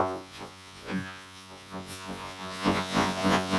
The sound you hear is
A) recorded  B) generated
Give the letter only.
B